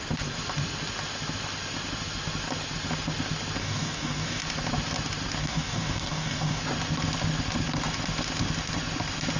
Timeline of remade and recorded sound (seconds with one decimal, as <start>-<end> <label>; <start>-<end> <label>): 0.0-3.6 recorded; 3.6-4.4 remade; 4.4-5.4 recorded; 5.4-6.6 remade; 6.6-9.4 recorded